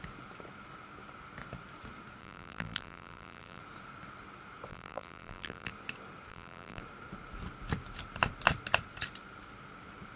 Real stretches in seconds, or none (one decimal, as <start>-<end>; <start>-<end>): 0.0-2.2; 3.6-4.7; 5.7-6.3; 6.8-10.2